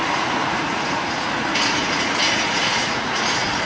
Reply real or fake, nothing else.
fake